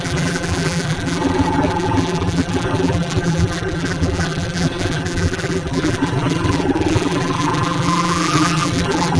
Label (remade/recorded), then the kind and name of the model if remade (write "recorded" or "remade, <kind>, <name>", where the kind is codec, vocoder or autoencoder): remade, vocoder, BigVGAN v2